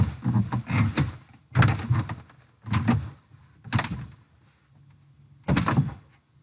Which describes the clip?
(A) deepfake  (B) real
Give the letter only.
B